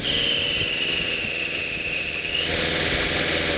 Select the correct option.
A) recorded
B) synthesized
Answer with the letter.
A